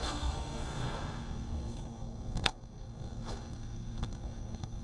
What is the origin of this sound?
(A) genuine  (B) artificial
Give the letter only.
B